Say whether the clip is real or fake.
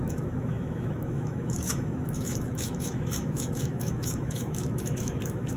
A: fake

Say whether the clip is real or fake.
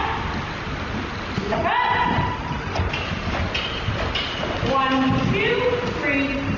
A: real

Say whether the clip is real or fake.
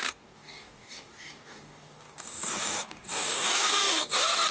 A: fake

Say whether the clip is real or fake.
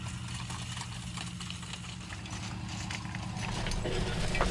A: real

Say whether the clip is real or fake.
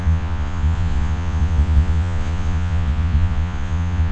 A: fake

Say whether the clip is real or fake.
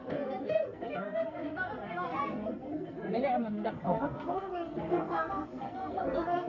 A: fake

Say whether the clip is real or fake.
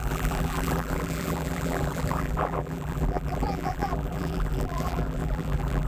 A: fake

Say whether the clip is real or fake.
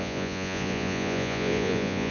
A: fake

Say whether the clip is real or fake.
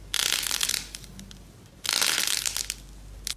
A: real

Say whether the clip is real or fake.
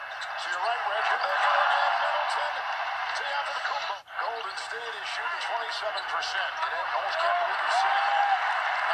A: real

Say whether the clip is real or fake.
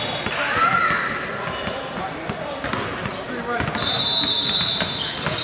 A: real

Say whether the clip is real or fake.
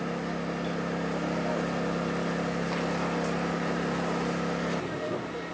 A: real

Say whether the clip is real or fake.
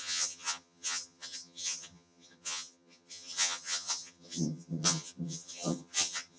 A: fake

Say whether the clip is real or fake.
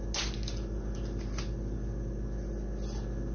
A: real